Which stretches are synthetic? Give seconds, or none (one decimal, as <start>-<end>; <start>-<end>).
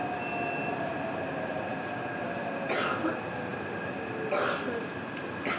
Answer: none